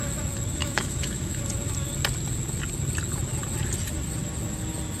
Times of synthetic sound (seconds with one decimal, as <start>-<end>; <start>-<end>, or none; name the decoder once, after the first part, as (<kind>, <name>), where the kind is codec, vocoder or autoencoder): 0.6-1.4 (autoencoder, DAC-VAE)